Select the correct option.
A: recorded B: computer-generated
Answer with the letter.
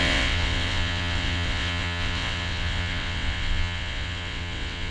B